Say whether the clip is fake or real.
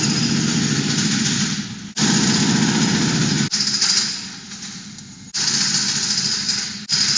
real